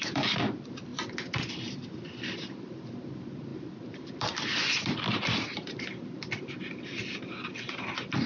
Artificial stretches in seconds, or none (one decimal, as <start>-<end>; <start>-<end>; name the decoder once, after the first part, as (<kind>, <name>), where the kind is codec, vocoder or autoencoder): 0.0-0.9 (vocoder, BigVGAN v2); 1.5-8.3